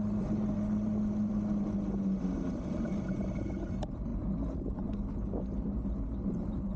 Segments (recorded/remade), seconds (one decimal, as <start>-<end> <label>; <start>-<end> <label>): 0.0-6.8 recorded